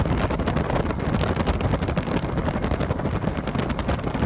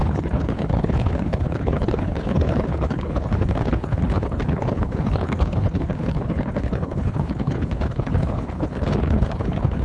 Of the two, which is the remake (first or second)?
second